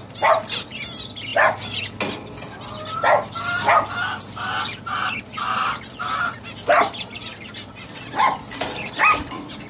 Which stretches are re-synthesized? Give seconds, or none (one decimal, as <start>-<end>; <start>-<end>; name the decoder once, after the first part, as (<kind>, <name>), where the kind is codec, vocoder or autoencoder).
none